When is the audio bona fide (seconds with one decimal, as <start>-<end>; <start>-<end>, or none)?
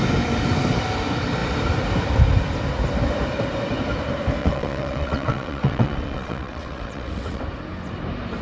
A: 0.0-4.4; 7.4-8.4